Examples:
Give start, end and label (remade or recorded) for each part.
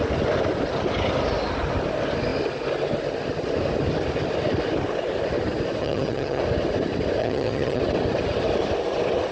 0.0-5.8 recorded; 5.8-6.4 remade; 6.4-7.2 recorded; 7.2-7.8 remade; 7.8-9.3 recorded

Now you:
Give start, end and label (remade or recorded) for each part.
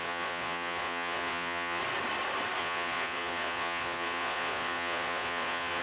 0.0-1.8 remade; 1.8-2.6 recorded; 2.6-5.8 remade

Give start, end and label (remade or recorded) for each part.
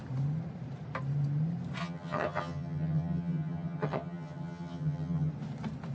0.0-1.8 recorded; 1.8-5.3 remade; 5.3-5.9 recorded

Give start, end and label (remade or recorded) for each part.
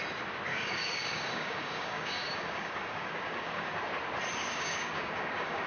0.0-0.5 recorded; 0.5-3.8 remade; 3.8-4.4 recorded; 4.4-5.7 remade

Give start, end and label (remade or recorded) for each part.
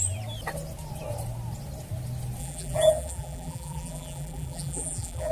0.0-2.4 recorded; 2.4-5.3 remade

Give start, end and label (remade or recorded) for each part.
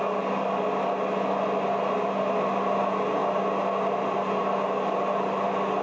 0.0-5.8 recorded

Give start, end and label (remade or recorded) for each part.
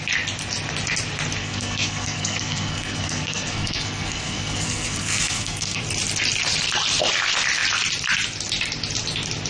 0.0-1.4 recorded; 1.4-5.8 remade; 5.8-9.5 recorded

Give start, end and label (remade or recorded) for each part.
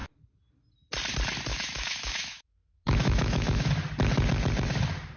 0.0-1.5 recorded; 1.5-3.7 remade; 3.7-5.2 recorded